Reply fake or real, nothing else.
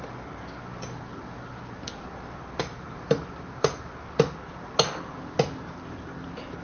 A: real